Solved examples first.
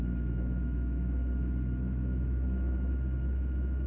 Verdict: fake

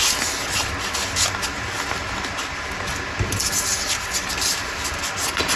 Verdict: real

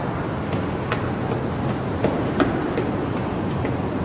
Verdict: real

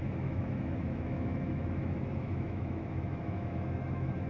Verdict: fake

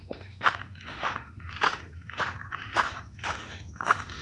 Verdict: fake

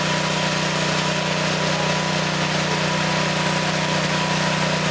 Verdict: real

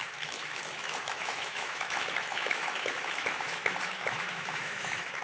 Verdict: fake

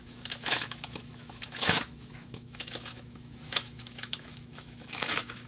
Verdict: fake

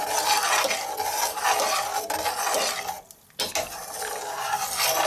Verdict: real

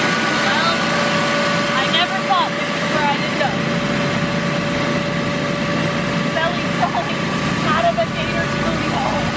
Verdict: real